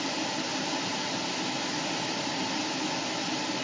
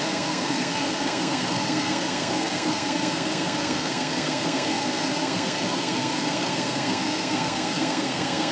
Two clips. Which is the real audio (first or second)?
first